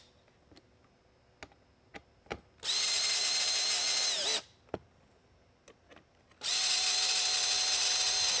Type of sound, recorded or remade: recorded